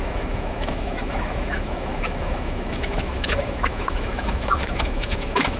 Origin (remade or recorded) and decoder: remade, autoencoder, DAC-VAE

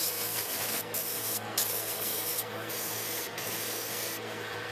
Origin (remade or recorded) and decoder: remade, codec, SNAC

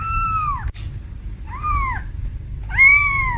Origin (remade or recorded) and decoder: recorded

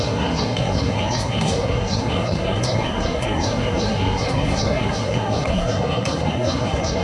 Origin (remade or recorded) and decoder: remade, codec, SNAC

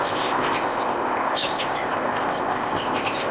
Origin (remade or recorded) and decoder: remade, codec, ZipCodec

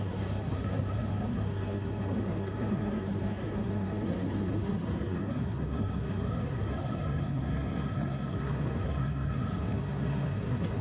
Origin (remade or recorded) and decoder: remade, codec, SNAC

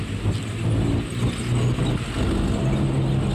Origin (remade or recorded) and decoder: recorded